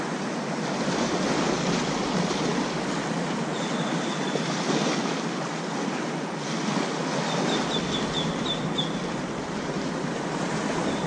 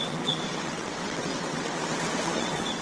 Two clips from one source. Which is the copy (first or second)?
second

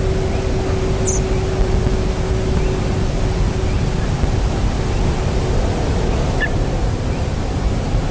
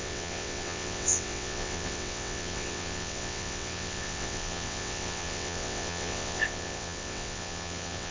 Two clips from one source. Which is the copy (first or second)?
second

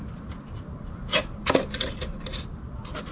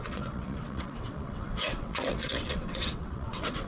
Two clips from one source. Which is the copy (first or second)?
second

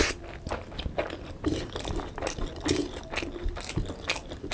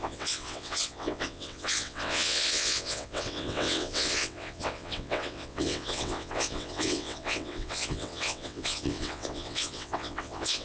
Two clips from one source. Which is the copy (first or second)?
second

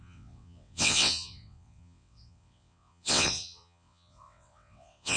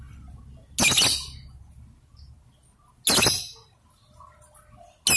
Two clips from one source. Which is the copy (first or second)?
first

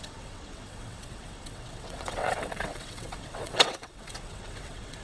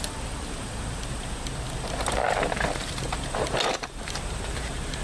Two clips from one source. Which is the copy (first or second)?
first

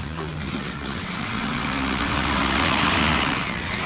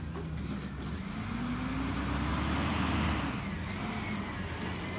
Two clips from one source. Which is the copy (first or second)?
first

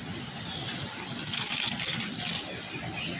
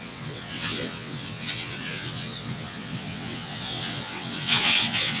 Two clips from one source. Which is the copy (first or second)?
second